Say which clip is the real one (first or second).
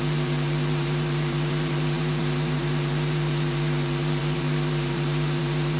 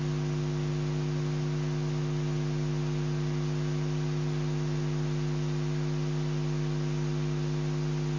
second